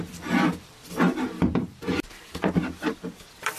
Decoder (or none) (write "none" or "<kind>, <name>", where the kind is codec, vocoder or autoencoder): vocoder, BigVGAN v2